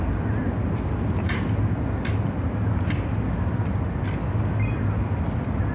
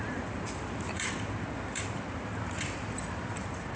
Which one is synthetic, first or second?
second